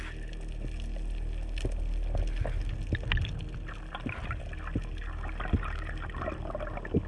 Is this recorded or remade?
recorded